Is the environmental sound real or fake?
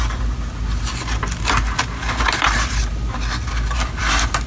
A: real